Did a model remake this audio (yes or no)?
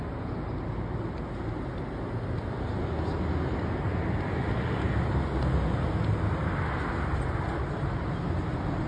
no